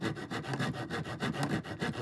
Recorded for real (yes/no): yes